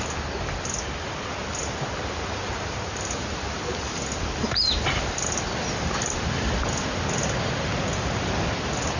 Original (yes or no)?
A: yes